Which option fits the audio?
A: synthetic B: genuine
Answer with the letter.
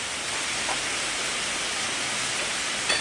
B